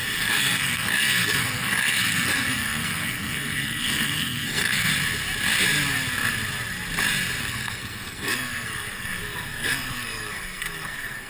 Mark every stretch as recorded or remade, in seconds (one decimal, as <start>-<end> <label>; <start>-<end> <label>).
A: 0.0-4.9 remade; 4.9-7.4 recorded; 7.4-11.3 remade

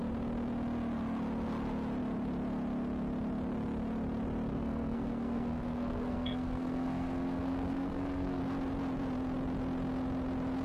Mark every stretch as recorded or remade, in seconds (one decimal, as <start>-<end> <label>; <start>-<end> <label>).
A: 0.0-4.5 recorded; 4.5-8.4 remade; 8.4-10.6 recorded

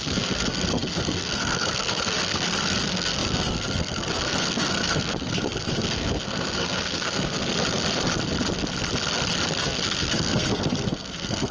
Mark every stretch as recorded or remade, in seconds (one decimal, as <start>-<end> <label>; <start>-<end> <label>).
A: 0.0-7.5 remade; 7.5-9.6 recorded; 9.6-11.5 remade

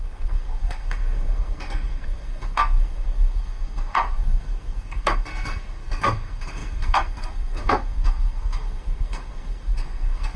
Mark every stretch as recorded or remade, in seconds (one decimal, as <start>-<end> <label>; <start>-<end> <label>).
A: 0.0-10.4 remade

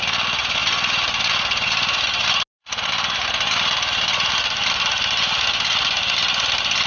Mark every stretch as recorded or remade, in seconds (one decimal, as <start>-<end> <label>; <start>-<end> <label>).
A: 0.0-6.9 recorded

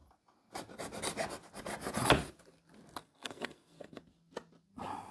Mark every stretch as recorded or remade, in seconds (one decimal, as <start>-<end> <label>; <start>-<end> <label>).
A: 0.0-3.0 recorded; 3.0-4.0 remade; 4.0-5.1 recorded

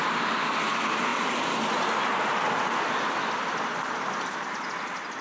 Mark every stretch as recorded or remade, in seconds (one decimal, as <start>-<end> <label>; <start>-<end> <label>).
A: 0.0-5.2 recorded